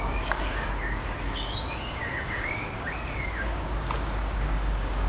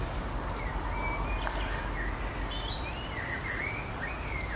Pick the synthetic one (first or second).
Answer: first